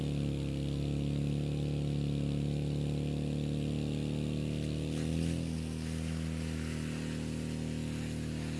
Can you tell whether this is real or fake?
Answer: real